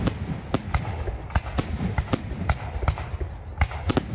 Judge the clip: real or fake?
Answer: real